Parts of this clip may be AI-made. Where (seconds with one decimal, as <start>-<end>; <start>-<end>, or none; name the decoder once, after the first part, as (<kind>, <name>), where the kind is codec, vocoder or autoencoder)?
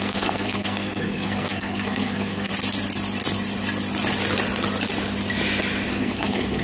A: 0.0-2.5 (codec, SNAC); 5.9-6.6